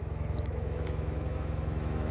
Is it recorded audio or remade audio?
remade